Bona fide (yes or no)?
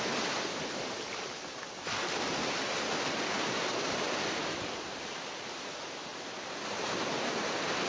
yes